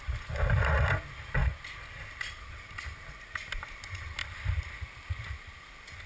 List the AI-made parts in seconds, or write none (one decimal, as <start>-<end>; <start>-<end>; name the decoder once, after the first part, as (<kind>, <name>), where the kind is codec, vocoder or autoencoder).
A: 0.0-0.6 (vocoder, BigVGAN v2); 1.4-3.6; 4.2-5.2